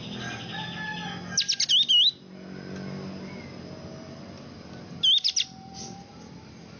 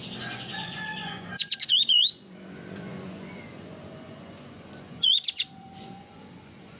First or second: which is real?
first